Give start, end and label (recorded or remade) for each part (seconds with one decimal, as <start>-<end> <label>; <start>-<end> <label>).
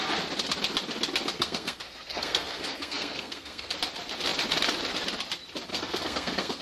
0.0-1.3 recorded; 1.3-3.7 remade; 3.7-5.7 recorded; 5.7-6.6 remade